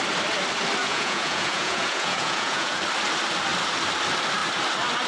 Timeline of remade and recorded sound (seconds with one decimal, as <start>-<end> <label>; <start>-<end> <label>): 0.0-0.8 recorded; 0.8-2.8 remade; 2.8-5.1 recorded